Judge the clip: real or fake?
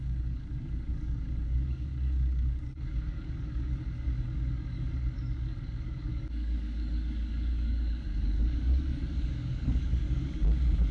fake